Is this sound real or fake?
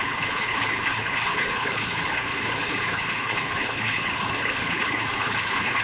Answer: fake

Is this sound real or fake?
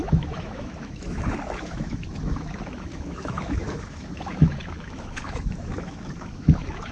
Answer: fake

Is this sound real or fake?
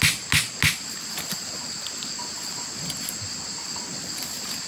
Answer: real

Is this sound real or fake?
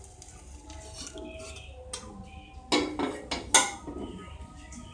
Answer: real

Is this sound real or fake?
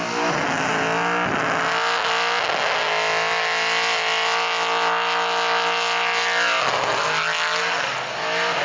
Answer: real